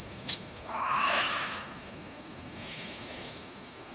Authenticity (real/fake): fake